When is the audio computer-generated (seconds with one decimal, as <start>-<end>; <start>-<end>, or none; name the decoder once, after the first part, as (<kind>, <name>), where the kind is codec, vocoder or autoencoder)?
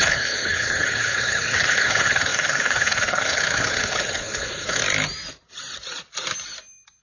0.0-4.8 (codec, HILCodec)